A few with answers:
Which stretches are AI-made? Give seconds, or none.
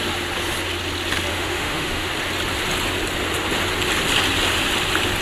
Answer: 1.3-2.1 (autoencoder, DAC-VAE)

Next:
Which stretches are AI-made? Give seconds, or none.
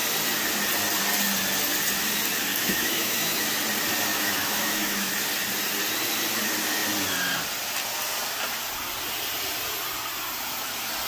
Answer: 2.5-3.4 (autoencoder, DAC-VAE); 4.1-5.1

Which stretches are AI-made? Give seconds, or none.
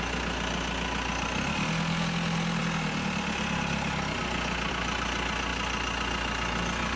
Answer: none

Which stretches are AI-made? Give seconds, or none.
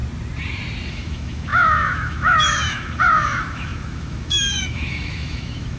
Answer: 0.9-5.8 (autoencoder, DAC-VAE)